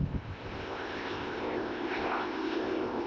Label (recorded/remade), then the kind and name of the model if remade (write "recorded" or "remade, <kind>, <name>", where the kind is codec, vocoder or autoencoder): remade, codec, ZipCodec